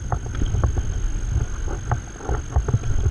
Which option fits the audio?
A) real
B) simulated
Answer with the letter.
A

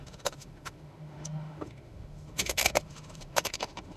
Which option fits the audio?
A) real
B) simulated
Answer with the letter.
B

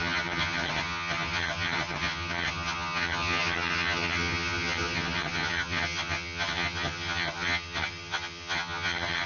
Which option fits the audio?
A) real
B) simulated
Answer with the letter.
B